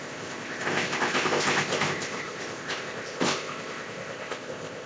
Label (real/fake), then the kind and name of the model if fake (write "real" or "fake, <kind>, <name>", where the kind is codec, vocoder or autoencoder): fake, codec, ZipCodec